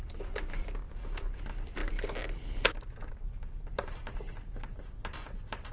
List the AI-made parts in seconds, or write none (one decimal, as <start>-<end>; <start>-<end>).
none